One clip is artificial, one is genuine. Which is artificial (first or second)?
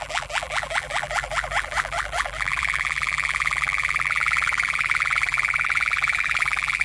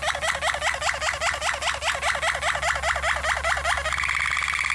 first